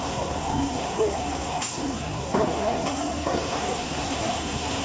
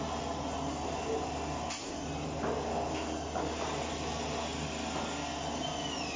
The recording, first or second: second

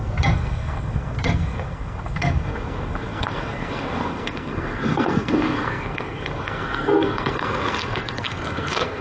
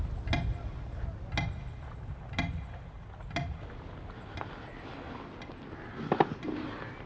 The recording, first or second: second